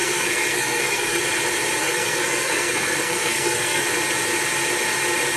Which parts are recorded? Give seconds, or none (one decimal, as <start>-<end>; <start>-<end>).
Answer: 1.2-1.8; 3.8-5.4